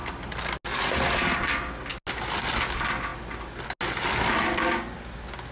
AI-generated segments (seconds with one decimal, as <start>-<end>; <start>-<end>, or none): none